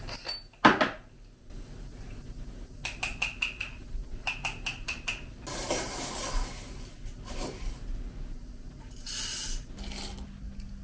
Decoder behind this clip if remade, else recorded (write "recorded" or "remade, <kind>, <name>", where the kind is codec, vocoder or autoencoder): recorded